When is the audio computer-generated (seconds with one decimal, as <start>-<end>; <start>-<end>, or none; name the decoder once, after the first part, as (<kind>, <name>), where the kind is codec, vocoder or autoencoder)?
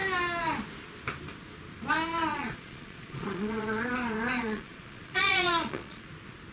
2.3-3.9 (vocoder, Vocos); 4.3-6.1